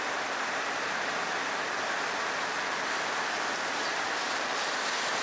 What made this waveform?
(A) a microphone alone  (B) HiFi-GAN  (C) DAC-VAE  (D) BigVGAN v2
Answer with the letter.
A